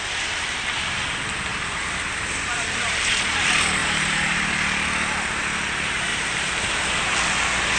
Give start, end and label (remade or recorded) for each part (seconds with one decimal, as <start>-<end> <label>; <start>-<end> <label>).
0.0-1.5 recorded; 1.5-3.1 remade; 3.1-3.8 recorded; 3.8-4.5 remade; 4.5-6.1 recorded; 6.1-7.1 remade; 7.1-7.8 recorded